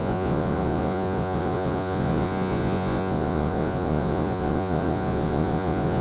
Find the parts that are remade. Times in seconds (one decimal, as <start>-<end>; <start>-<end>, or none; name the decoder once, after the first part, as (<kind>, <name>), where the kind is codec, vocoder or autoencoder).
0.0-6.0 (vocoder, Vocos)